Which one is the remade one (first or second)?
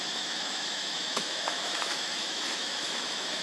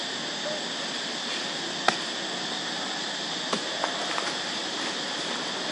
first